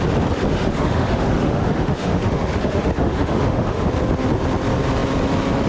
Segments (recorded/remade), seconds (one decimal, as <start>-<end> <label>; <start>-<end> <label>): 0.0-0.5 recorded; 0.5-3.9 remade; 3.9-5.7 recorded